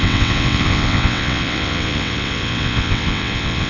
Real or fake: fake